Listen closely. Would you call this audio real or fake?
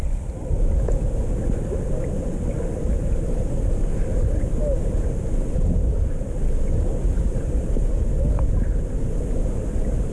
real